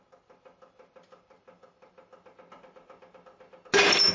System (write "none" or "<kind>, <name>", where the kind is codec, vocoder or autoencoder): none